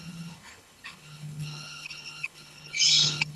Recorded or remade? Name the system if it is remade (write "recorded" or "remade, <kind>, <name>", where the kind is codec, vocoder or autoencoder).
remade, codec, HILCodec